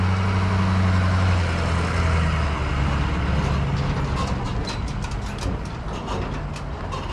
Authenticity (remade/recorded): recorded